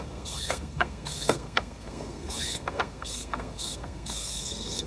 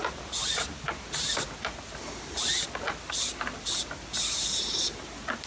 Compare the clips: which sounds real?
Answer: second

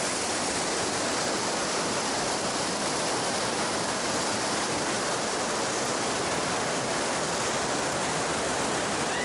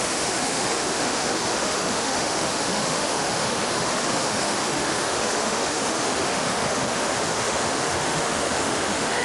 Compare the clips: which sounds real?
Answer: first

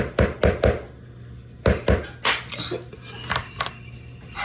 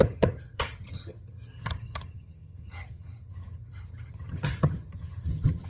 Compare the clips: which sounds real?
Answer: first